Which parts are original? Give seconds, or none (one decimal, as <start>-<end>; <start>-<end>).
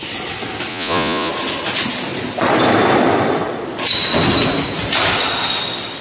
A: 0.0-0.7; 1.3-6.0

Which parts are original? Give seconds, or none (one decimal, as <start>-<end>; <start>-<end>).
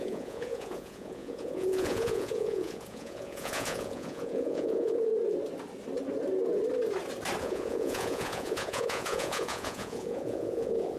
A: 5.1-7.4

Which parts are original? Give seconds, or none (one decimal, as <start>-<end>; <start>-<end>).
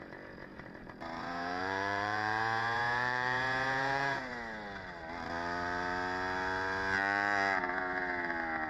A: 0.5-1.2; 4.3-8.7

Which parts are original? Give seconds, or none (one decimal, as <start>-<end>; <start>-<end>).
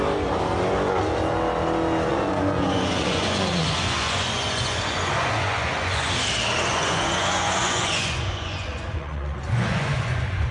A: 0.0-2.1; 6.1-6.7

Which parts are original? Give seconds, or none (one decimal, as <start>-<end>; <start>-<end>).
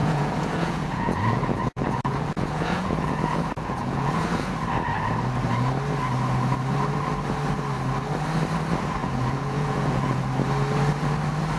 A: 4.5-9.0; 10.2-11.6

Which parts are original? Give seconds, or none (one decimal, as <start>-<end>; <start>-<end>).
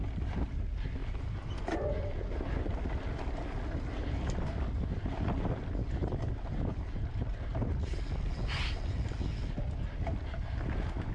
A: 0.0-11.1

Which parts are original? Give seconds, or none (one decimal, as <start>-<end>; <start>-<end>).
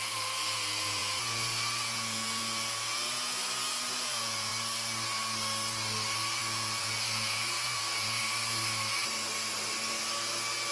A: 4.5-6.4; 8.2-10.7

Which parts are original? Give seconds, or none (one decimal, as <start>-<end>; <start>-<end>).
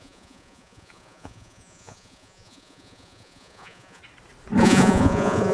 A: 4.0-4.6